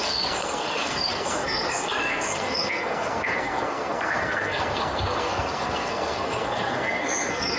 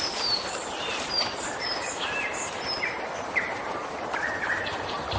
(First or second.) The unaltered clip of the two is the second